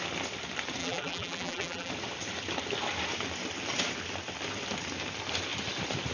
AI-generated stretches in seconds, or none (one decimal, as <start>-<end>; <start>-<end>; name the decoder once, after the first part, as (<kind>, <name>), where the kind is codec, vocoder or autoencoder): 0.8-1.9 (vocoder, BigVGAN v2)

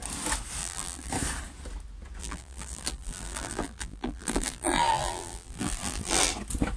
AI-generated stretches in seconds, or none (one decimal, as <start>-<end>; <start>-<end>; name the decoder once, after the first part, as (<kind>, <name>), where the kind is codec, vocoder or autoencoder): 0.6-1.1 (vocoder, BigVGAN v2); 2.2-6.3

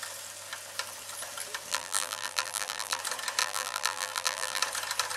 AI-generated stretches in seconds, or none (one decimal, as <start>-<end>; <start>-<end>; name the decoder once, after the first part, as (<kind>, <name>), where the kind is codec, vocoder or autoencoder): 1.7-3.0 (vocoder, BigVGAN v2); 3.4-4.6